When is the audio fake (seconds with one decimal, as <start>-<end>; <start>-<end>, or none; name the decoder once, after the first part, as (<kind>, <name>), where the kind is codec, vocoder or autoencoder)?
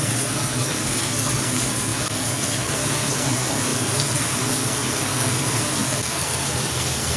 0.0-7.2 (codec, SNAC)